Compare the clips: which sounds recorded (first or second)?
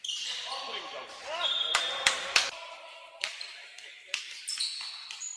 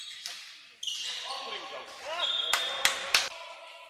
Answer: second